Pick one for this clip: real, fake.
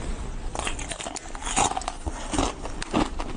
real